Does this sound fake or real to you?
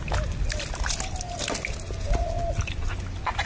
real